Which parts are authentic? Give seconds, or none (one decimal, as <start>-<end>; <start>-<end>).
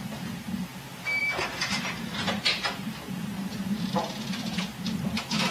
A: 0.7-1.2